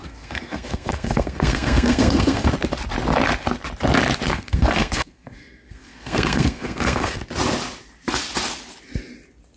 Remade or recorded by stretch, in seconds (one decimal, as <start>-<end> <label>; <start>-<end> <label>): 0.0-2.5 remade; 2.5-4.3 recorded; 4.3-7.2 remade; 7.2-9.6 recorded